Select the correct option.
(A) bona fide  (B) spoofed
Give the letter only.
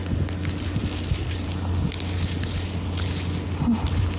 A